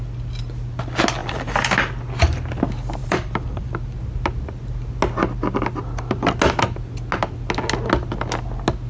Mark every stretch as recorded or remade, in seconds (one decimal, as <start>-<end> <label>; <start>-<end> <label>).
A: 0.0-1.2 recorded; 1.2-1.9 remade; 1.9-3.0 recorded; 3.0-3.7 remade; 3.7-8.9 recorded